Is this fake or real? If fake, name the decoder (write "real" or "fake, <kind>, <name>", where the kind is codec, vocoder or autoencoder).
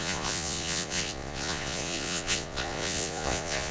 fake, vocoder, Vocos